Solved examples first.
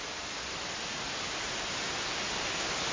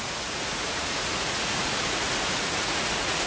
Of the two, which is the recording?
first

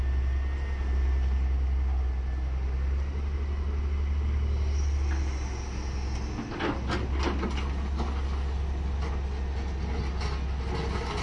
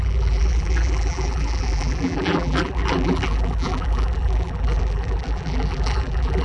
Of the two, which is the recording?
first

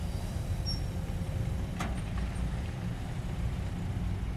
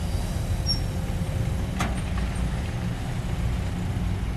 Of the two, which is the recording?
second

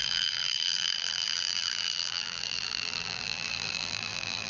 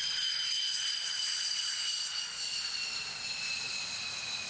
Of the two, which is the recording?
second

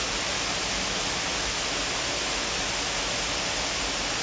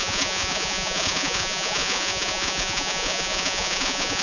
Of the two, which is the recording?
first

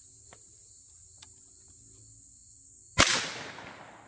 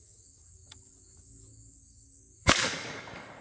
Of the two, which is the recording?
first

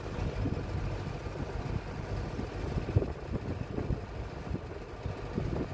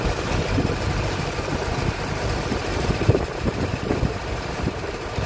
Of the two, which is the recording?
first